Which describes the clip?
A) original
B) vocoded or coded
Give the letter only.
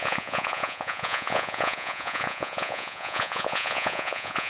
B